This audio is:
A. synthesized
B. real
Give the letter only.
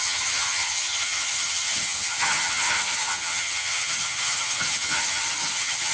A